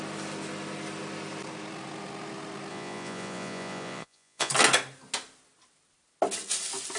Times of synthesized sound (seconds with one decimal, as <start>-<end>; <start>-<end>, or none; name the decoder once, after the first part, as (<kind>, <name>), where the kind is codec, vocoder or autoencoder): 2.7-4.5 (vocoder, Vocos)